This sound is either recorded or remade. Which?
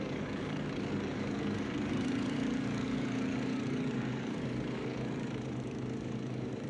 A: remade